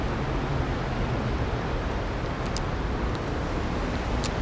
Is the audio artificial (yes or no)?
no